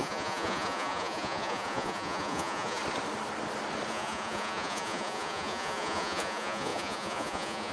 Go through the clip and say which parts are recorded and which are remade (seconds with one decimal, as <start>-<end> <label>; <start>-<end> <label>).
0.0-2.8 remade; 2.8-3.9 recorded; 3.9-7.7 remade